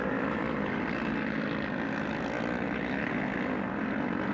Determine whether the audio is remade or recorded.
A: recorded